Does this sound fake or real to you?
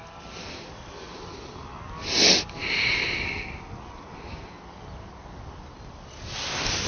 real